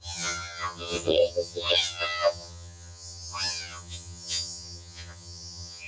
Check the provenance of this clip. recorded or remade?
remade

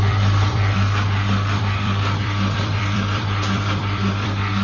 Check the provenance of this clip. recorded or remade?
remade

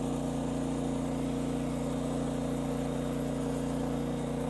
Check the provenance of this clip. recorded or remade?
recorded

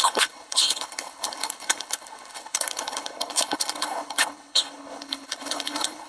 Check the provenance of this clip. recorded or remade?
remade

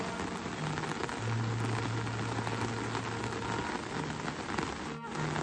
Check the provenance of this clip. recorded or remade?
recorded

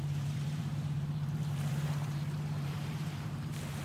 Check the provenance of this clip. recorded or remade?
remade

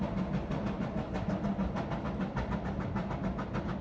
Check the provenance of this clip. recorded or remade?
recorded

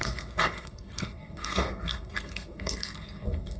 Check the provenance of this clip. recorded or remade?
remade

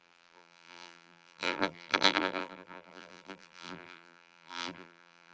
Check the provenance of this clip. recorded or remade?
remade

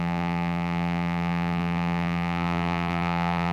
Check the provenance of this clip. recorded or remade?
remade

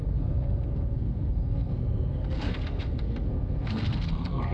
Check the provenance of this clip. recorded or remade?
remade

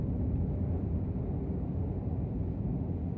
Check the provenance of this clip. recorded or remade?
recorded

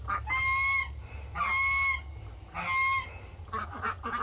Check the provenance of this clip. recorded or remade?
recorded